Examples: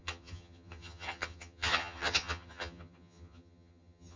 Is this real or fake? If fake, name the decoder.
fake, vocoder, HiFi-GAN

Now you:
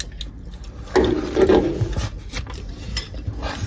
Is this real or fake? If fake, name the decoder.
real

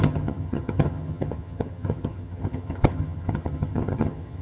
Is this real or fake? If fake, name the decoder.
fake, vocoder, HiFi-GAN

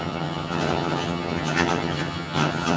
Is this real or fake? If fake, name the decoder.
fake, vocoder, HiFi-GAN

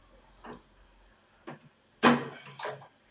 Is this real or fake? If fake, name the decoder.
real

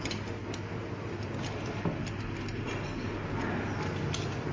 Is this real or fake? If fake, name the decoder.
real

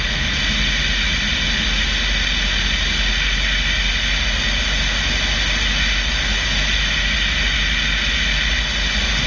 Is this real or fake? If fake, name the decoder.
real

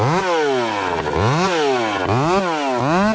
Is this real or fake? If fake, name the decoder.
real